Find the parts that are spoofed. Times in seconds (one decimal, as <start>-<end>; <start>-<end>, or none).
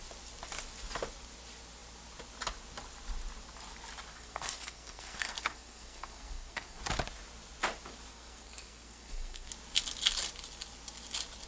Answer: 4.1-6.8; 8.1-9.5